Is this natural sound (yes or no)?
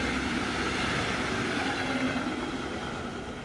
yes